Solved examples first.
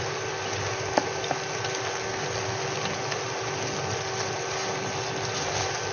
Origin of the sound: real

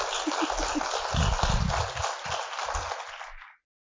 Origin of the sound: real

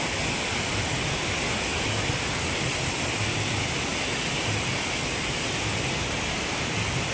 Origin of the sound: real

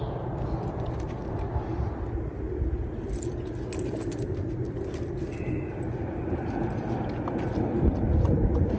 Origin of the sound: real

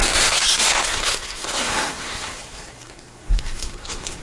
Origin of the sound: fake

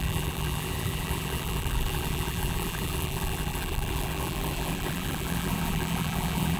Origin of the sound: fake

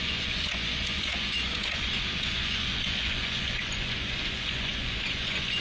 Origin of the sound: fake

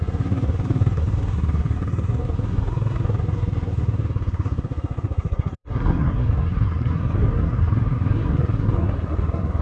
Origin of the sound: fake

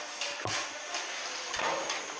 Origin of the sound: real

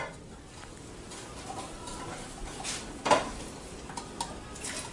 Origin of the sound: real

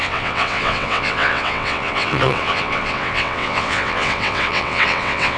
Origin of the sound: fake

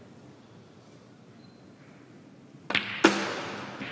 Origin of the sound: real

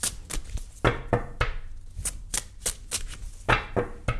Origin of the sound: real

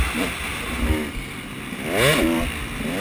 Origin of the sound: real